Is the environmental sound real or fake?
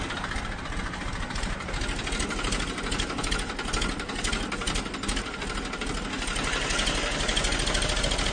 real